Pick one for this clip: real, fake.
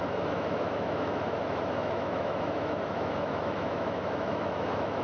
fake